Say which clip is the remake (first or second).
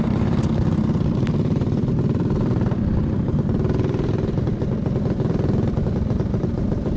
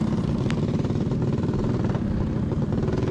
first